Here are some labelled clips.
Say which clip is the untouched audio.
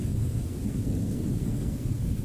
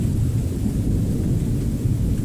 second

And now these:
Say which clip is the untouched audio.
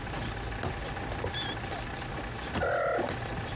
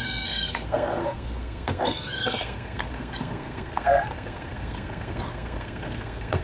first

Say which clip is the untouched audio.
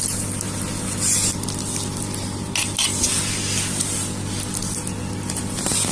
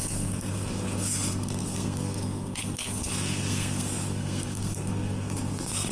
first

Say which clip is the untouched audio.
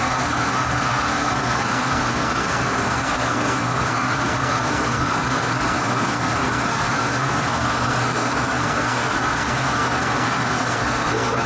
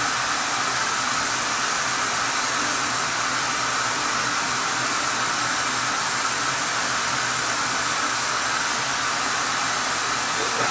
second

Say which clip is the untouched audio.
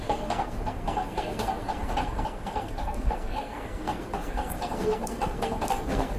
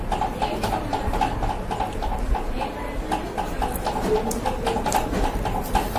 second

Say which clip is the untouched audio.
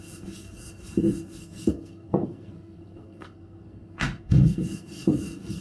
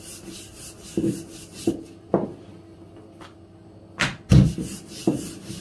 second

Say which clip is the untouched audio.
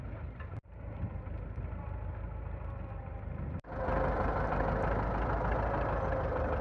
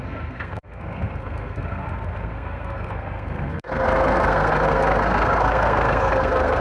first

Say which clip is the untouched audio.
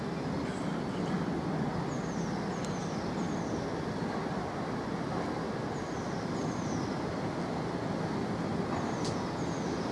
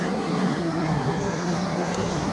first